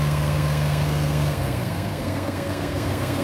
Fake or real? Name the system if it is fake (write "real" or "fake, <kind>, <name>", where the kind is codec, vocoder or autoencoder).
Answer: fake, codec, SNAC